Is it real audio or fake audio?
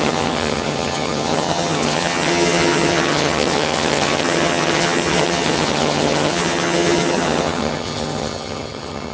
fake